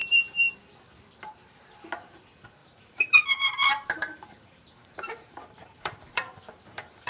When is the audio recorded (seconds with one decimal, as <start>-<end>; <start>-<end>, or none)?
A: 0.6-2.6